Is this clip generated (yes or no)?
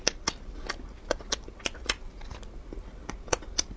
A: no